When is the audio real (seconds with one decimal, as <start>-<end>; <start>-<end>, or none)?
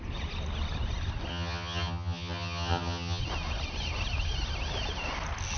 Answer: 0.0-1.3; 3.2-5.6